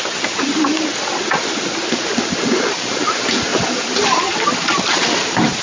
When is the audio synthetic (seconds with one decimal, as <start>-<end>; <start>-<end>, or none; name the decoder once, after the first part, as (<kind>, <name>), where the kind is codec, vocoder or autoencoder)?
none